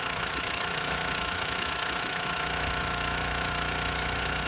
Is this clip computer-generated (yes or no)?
yes